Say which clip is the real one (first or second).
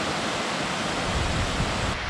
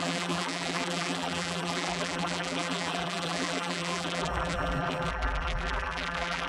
first